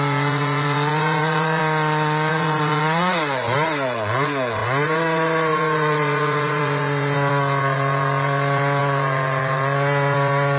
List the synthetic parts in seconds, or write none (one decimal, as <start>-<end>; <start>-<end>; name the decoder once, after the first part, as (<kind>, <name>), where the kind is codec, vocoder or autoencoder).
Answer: 0.0-1.6 (vocoder, Vocos); 2.3-10.6